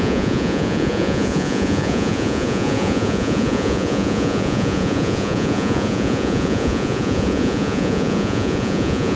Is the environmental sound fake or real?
fake